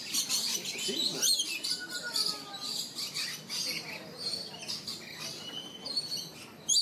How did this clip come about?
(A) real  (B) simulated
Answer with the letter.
A